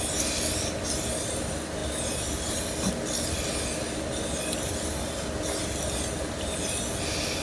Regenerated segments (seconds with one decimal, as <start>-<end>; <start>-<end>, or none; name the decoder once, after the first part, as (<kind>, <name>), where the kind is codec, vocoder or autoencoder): none